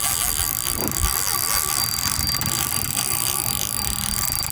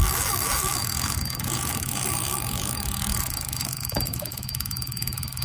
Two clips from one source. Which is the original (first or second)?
first